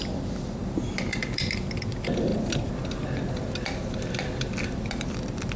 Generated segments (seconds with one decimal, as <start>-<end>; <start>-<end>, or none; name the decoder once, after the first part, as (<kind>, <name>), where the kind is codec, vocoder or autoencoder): 0.0-2.3 (vocoder, BigVGAN v2); 4.6-5.6